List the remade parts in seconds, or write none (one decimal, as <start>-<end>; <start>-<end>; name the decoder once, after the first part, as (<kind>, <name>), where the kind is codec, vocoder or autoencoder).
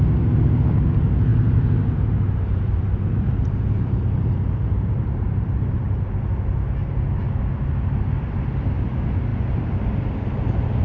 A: 1.3-6.1 (vocoder, BigVGAN v2)